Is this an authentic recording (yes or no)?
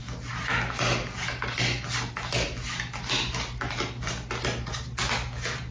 yes